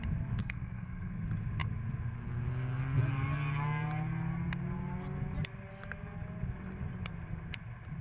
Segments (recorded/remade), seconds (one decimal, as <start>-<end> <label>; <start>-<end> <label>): 0.0-0.4 recorded; 0.4-1.2 remade; 1.2-8.0 recorded